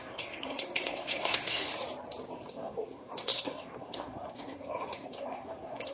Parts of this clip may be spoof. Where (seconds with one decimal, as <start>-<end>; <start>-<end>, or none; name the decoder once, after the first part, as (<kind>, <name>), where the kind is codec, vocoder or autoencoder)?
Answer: 0.0-1.7 (codec, SNAC); 2.5-5.9